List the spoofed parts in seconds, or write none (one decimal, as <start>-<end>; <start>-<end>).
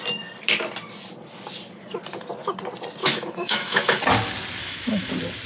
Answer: 3.0-4.0; 4.6-5.1